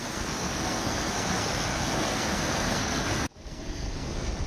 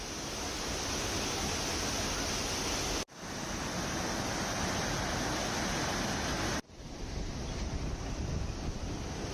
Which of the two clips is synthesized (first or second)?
first